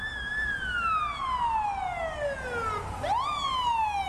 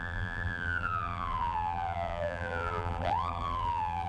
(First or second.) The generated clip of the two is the second